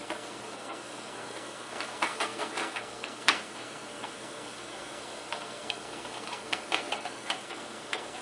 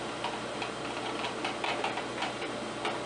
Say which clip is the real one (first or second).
second